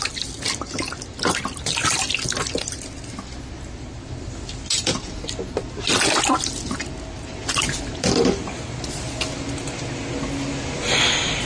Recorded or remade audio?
recorded